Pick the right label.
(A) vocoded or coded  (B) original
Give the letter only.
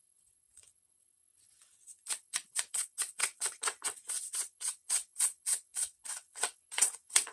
A